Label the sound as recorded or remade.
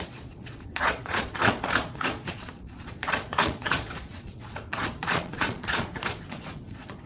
remade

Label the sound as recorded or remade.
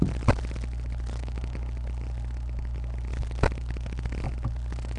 recorded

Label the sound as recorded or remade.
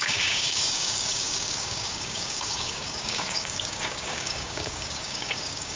remade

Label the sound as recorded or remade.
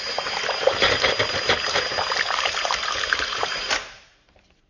remade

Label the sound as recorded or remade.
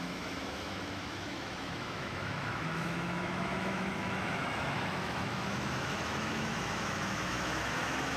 remade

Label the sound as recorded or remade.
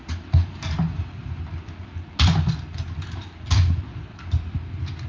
recorded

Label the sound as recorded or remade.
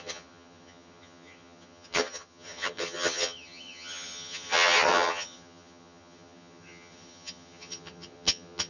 remade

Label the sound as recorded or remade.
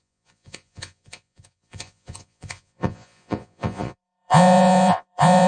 remade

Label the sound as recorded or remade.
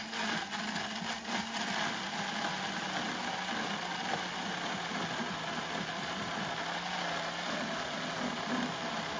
recorded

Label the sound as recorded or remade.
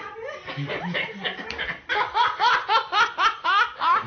recorded